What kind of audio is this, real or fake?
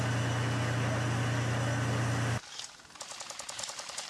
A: real